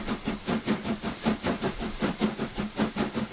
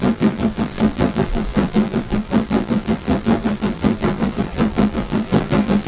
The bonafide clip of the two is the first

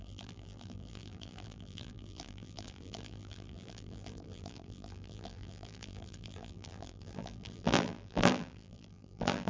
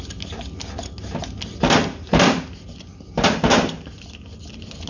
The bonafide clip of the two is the second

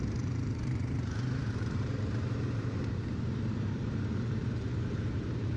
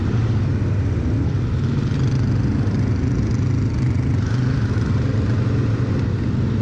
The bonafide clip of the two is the second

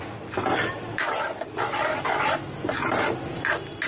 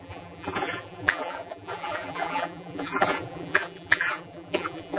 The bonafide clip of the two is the first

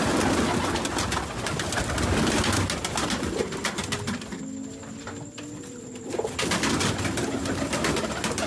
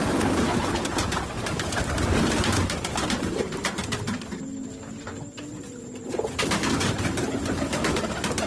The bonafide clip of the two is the first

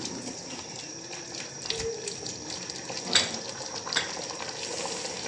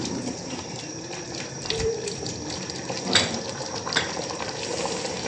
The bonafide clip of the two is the first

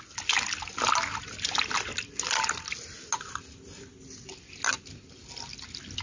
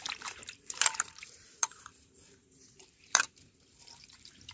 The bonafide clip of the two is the first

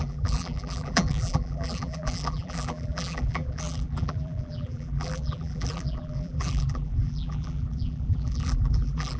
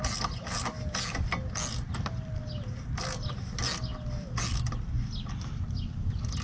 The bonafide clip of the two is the second